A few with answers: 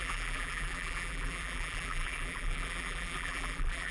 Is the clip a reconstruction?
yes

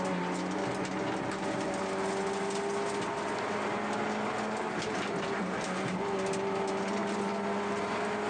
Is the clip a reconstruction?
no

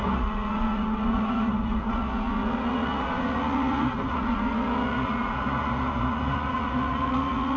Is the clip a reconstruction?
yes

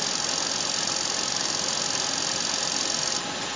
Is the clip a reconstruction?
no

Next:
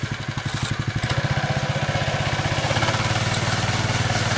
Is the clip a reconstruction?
no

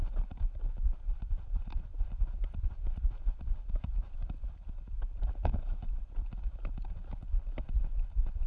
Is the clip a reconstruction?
no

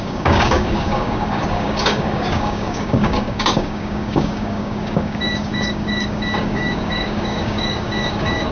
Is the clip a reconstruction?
yes